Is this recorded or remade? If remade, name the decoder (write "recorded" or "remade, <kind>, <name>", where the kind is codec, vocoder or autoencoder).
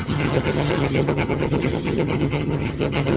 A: remade, vocoder, HiFi-GAN